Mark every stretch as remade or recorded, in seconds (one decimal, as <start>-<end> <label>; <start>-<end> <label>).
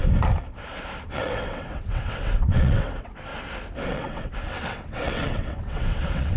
0.0-1.1 recorded; 1.1-3.3 remade; 3.3-3.9 recorded; 3.9-6.4 remade